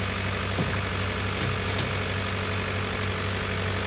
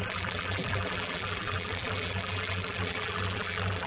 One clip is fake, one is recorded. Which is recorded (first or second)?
first